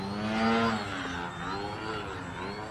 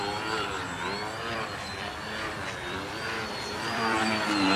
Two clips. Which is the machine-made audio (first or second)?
second